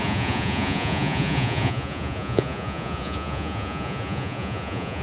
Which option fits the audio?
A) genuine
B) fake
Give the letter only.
B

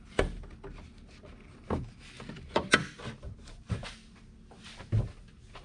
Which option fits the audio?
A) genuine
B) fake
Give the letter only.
A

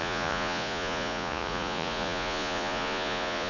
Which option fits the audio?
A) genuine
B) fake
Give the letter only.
B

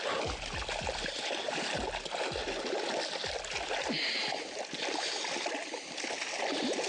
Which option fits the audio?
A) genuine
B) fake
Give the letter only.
A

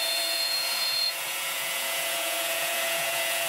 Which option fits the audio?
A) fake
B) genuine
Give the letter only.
A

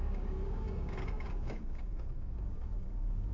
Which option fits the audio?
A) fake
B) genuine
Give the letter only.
A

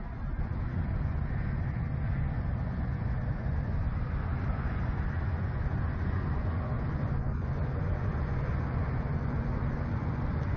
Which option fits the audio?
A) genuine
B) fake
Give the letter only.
B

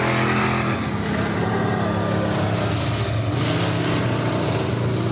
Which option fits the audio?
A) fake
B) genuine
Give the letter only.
B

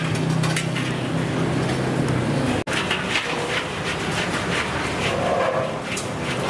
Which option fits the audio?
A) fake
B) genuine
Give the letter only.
B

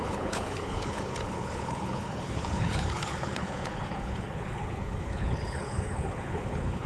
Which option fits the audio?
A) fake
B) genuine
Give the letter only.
A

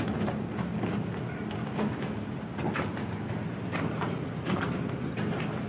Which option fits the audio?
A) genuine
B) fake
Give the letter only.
A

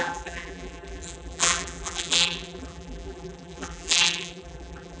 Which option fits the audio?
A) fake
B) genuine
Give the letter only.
A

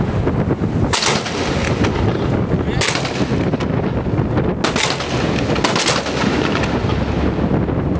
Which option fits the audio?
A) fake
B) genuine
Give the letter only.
B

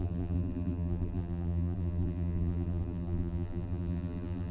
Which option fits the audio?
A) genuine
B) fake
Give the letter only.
B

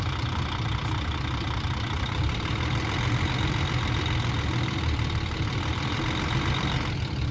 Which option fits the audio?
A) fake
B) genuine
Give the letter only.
A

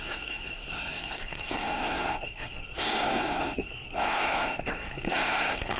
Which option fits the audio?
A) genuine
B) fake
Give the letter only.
B